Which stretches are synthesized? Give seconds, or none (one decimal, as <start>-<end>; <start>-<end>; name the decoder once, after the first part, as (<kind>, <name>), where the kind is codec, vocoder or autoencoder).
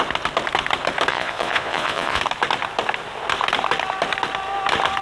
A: 1.1-2.2 (vocoder, Vocos)